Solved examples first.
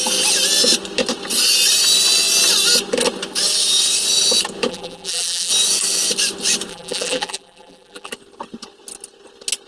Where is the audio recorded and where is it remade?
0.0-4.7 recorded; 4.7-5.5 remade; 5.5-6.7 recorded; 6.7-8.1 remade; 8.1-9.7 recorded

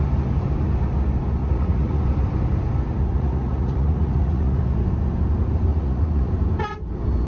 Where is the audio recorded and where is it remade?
0.0-1.4 recorded; 1.4-2.0 remade; 2.0-3.1 recorded; 3.1-4.6 remade; 4.6-5.7 recorded; 5.7-6.3 remade; 6.3-7.3 recorded